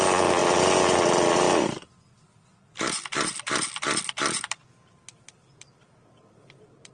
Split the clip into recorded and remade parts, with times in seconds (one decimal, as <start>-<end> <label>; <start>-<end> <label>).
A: 0.0-6.9 recorded